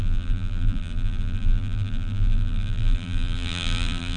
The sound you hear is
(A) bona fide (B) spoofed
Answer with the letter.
B